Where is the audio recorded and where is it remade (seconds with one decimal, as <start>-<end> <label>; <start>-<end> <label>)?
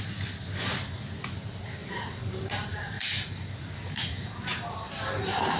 0.0-1.8 recorded; 1.8-5.6 remade